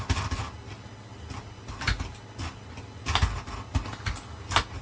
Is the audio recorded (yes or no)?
yes